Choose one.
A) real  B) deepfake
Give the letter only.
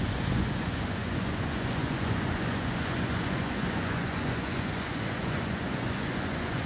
B